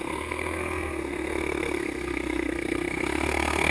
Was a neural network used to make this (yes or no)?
yes